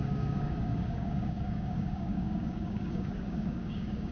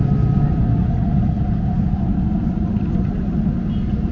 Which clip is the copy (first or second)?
first